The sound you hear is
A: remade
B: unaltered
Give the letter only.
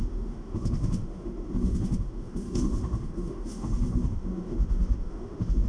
A